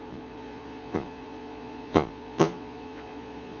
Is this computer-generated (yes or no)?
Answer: yes